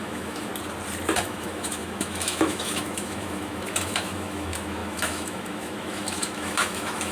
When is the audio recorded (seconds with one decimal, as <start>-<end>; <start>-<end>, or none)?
0.5-1.2